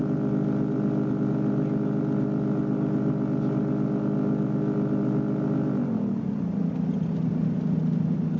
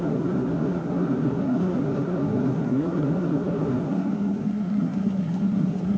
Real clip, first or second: first